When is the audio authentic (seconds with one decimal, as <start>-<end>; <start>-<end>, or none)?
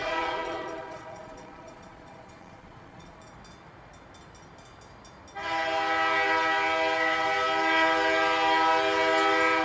3.3-9.6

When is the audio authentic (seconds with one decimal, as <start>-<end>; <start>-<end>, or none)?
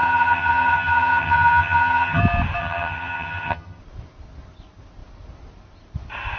2.2-2.6; 3.8-6.4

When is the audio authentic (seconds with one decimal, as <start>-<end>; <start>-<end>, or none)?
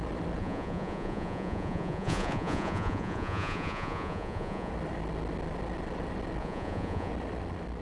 0.0-0.4; 4.7-6.4; 7.1-7.8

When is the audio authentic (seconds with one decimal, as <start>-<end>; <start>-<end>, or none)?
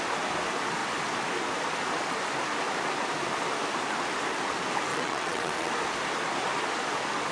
0.0-4.9; 5.7-7.3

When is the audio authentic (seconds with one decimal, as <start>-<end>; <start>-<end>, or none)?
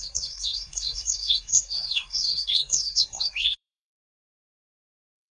none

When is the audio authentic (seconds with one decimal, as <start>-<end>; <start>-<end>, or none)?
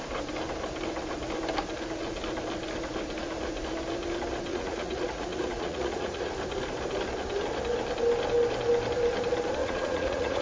0.0-4.5; 6.3-9.6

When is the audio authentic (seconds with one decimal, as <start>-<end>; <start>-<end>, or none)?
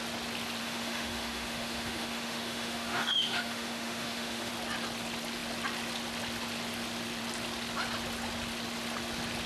0.0-0.6; 4.5-9.5